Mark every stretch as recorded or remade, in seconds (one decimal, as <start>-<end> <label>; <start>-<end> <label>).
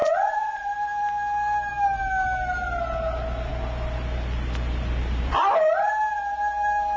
0.0-0.7 remade; 0.7-7.0 recorded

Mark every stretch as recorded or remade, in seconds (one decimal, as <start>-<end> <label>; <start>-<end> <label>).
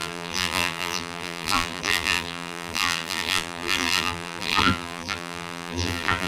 0.0-6.3 remade